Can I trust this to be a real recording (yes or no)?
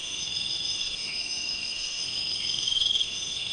no